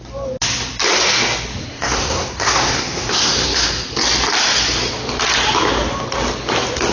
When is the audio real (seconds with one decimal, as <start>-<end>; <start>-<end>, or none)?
0.0-1.6; 3.7-6.9